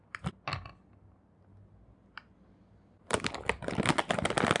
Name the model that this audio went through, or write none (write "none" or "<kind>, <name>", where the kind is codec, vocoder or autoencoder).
none